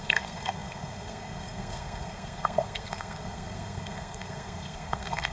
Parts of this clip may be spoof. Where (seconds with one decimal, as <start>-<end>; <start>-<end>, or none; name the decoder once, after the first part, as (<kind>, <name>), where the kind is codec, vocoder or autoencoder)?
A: 0.0-5.3 (codec, SNAC)